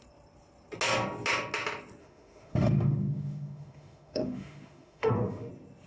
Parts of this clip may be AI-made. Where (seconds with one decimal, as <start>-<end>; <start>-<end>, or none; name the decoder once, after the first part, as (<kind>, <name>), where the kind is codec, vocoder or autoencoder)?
2.0-5.5 (autoencoder, DAC-VAE)